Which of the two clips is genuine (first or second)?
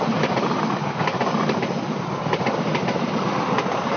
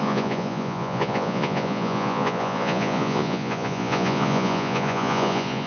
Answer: first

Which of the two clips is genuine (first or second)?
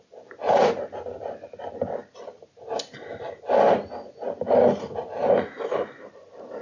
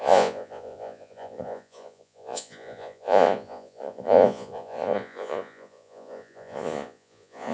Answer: first